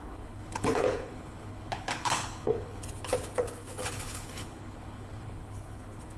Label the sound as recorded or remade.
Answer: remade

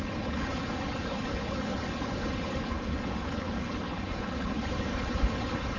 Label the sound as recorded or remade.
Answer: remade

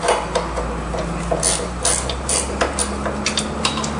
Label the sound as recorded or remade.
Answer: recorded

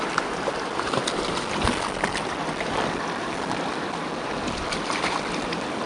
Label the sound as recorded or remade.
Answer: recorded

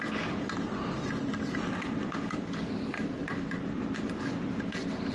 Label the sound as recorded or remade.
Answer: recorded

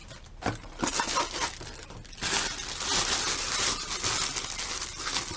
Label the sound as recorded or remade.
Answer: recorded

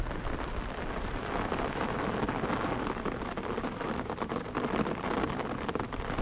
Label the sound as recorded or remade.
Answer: recorded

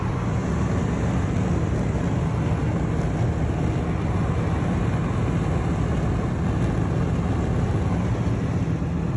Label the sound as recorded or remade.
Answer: recorded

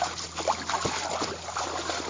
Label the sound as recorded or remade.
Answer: recorded